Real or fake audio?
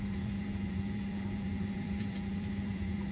fake